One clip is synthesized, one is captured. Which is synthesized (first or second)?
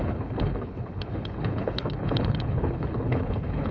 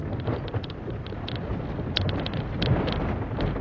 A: first